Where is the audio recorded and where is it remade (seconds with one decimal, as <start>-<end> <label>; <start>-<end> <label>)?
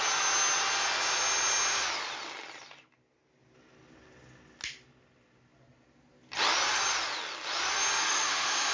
0.0-8.0 recorded; 8.0-8.7 remade